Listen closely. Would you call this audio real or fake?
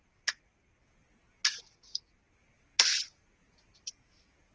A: real